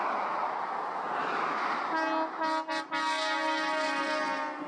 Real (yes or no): yes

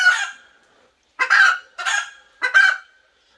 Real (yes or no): yes